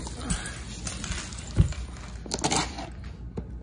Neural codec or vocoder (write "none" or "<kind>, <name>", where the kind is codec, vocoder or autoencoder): none